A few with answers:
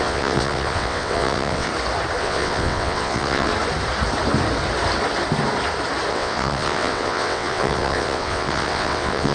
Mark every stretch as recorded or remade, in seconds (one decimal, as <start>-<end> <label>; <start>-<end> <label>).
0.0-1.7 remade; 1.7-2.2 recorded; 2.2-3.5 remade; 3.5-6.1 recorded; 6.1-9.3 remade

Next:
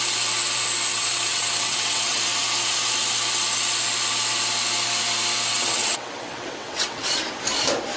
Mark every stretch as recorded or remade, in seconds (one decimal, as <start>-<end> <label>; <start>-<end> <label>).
0.0-0.9 recorded; 0.9-2.2 remade; 2.2-5.5 recorded; 5.5-7.2 remade; 7.2-8.0 recorded

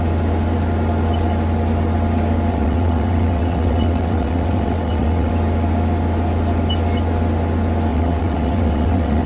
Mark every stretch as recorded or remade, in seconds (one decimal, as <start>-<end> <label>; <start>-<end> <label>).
0.0-2.5 recorded; 2.5-5.3 remade; 5.3-7.9 recorded; 7.9-9.3 remade